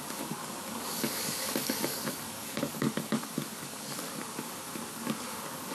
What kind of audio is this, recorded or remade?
remade